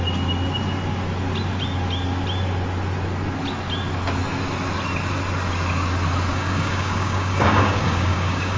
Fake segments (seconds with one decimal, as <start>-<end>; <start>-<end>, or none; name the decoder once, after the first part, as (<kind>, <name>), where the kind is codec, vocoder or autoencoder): 6.3-8.6 (codec, DAC)